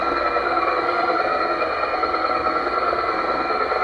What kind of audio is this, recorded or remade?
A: remade